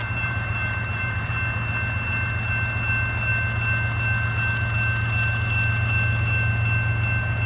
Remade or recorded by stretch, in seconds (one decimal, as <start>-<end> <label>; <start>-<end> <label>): 0.0-1.3 remade; 1.3-7.5 recorded